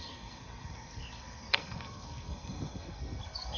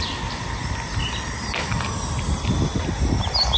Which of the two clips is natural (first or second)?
second